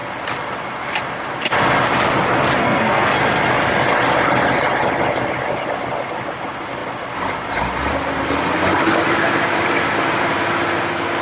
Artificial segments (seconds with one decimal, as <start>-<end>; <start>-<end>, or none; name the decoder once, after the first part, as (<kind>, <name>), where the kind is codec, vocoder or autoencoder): 2.6-3.1 (codec, SNAC)